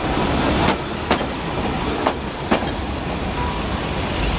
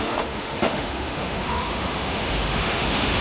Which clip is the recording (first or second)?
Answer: first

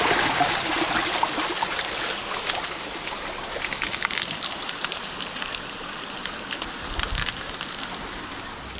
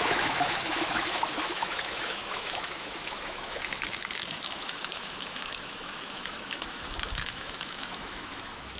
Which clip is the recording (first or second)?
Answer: first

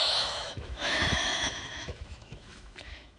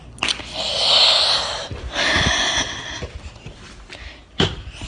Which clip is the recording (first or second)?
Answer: second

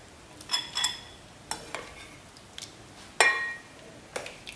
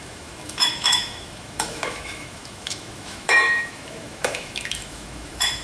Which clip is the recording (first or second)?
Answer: first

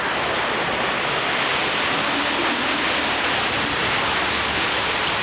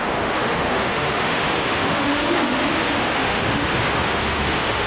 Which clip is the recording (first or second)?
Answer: first